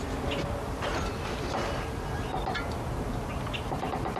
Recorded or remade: recorded